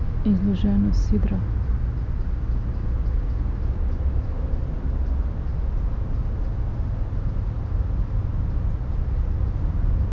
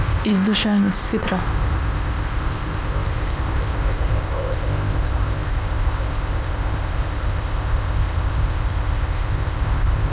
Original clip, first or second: first